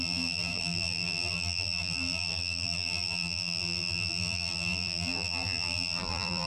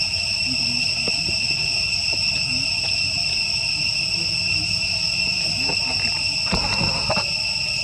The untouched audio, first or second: second